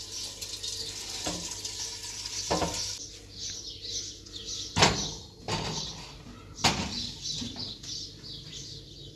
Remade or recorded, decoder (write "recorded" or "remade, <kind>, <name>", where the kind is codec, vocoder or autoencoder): recorded